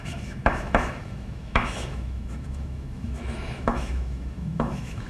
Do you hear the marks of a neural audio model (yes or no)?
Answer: yes